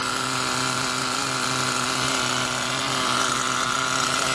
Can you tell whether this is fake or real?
real